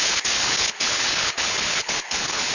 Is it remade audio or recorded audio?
remade